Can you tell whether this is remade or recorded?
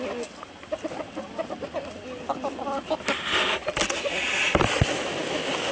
recorded